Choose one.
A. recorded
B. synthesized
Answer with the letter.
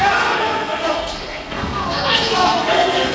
B